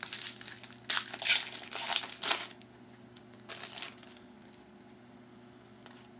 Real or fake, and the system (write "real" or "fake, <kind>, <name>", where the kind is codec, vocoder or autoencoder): real